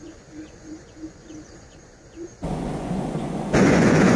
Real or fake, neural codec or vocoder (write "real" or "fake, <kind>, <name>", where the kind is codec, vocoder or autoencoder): fake, vocoder, Vocos